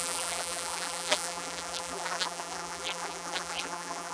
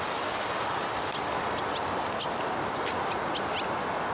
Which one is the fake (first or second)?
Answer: first